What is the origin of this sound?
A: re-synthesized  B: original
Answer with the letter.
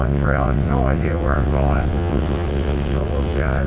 A